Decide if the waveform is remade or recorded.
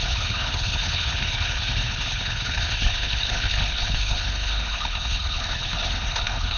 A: remade